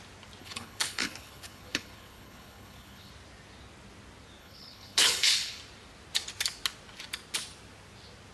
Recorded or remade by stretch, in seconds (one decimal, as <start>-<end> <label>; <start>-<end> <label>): 0.0-0.4 recorded; 0.4-3.1 remade; 3.1-4.4 recorded; 4.4-5.6 remade; 5.6-8.3 recorded